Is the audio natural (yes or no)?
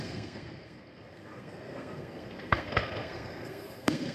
no